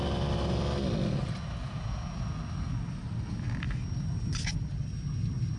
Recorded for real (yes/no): yes